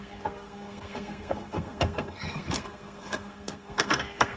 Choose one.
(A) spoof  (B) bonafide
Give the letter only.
A